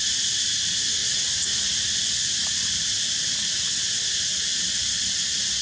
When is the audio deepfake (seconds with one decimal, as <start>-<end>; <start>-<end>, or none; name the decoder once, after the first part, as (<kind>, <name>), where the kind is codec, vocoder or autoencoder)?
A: none